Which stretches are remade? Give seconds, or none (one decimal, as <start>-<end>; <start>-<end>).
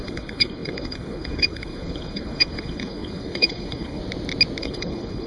0.0-4.0; 4.6-5.3